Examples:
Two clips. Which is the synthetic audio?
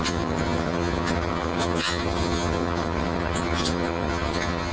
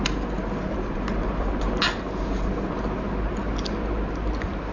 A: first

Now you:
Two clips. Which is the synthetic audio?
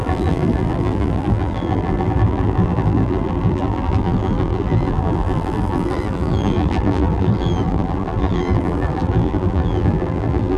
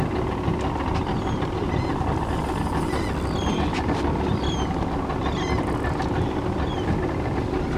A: first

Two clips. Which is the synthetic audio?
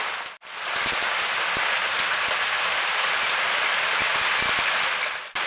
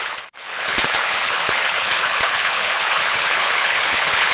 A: second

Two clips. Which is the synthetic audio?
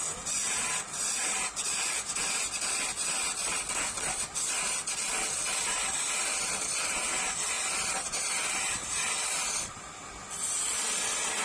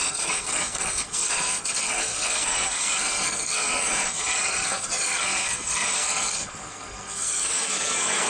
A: second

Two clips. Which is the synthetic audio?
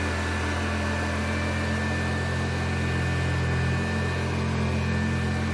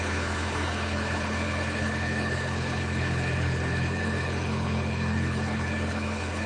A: second